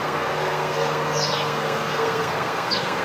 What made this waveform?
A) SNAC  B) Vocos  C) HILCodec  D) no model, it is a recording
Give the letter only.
A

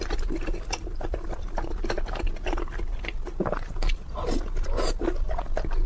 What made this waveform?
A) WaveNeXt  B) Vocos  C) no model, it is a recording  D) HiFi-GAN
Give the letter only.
C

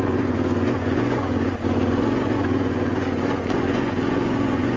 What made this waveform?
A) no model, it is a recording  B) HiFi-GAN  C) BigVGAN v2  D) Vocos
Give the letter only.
D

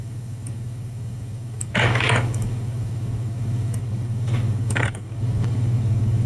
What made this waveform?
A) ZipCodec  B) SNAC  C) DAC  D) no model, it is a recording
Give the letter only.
C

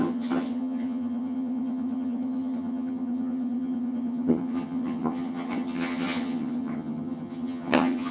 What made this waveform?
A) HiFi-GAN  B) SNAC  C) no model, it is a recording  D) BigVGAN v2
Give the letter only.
A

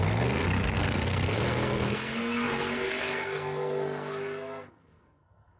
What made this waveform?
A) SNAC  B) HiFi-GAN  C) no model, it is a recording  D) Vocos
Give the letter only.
A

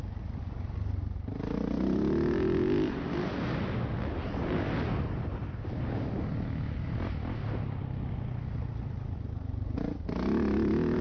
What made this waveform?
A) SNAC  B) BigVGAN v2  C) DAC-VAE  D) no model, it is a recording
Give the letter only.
D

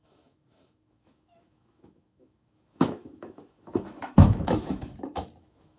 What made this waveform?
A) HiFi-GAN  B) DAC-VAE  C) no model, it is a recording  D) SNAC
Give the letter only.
B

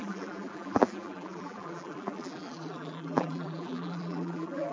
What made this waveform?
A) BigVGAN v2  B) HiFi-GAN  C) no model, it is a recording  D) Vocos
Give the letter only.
A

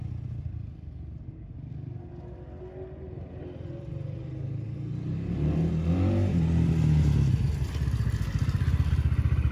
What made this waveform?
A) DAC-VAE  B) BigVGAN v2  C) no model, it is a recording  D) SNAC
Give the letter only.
C